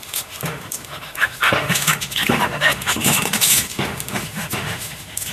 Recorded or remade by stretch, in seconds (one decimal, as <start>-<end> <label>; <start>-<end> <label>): 0.0-5.3 remade